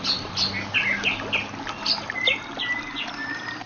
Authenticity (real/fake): real